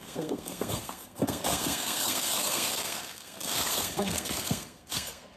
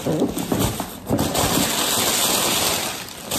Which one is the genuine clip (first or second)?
second